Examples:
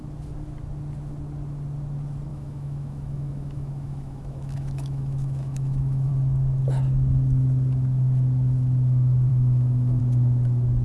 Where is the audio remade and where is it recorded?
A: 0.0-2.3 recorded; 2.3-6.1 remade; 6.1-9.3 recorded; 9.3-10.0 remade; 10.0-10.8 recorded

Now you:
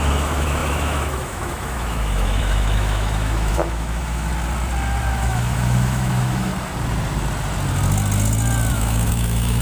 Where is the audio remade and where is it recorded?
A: 0.0-4.3 remade; 4.3-5.2 recorded; 5.2-6.5 remade; 6.5-8.7 recorded; 8.7-9.6 remade